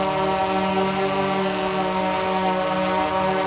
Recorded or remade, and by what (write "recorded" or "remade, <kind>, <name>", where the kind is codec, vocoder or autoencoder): recorded